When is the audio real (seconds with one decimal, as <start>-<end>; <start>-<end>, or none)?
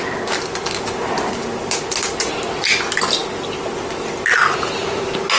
0.0-5.4